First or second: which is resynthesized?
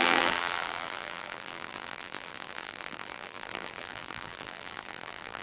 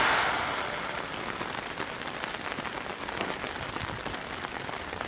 first